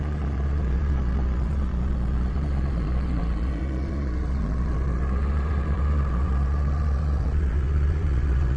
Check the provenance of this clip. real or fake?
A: fake